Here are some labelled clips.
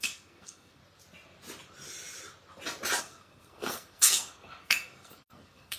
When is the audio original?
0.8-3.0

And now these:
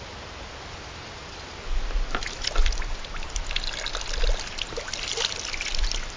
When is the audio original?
0.0-6.2

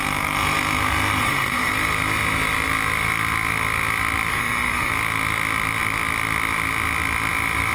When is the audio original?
0.0-1.2; 1.7-4.3; 4.9-7.7

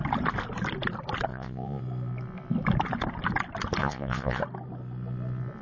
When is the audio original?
0.0-1.3; 1.8-3.8; 4.4-5.6

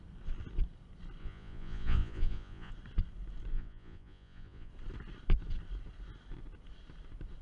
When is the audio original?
0.0-1.2; 2.7-3.5; 4.7-7.4

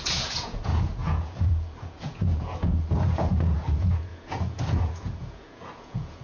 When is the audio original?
none